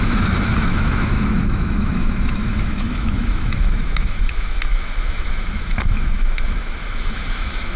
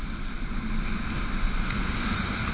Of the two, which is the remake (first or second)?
first